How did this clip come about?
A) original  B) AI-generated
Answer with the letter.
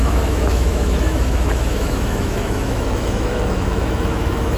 B